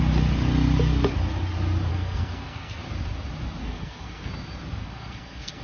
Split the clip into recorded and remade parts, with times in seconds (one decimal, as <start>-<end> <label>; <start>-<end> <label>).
0.0-1.9 recorded; 1.9-2.8 remade; 2.8-3.6 recorded; 3.6-4.3 remade; 4.3-4.8 recorded; 4.8-5.6 remade